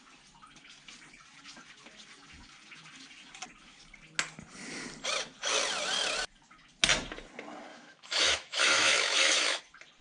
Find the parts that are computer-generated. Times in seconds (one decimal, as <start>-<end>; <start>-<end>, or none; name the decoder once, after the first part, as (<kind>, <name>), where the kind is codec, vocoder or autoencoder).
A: 7.7-9.6 (autoencoder, DAC-VAE)